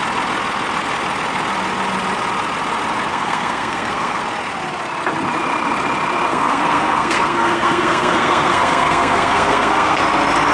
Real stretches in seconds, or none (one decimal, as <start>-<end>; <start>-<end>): 0.0-3.1; 4.2-6.3; 10.0-10.5